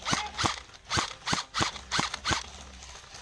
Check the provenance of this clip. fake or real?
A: real